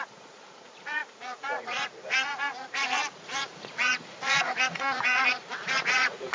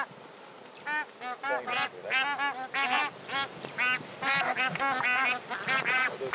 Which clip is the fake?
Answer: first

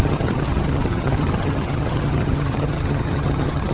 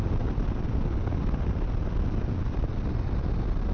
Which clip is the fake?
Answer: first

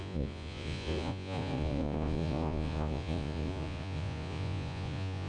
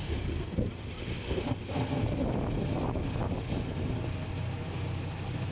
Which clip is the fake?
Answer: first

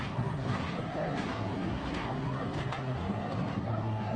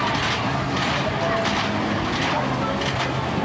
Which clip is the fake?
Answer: first